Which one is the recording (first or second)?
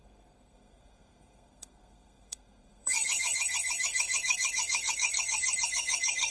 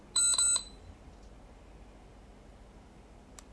second